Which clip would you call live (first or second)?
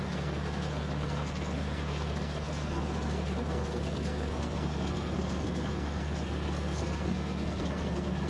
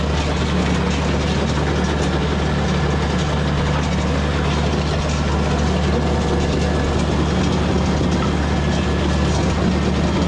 second